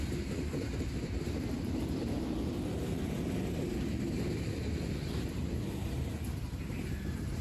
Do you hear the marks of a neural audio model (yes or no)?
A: yes